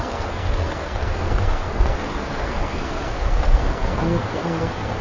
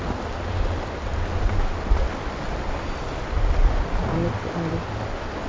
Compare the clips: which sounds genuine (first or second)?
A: second